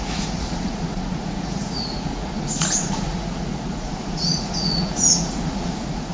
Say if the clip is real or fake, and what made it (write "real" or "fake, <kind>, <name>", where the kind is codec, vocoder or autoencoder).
fake, vocoder, Vocos